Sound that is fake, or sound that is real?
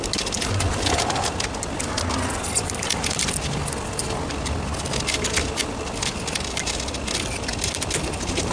real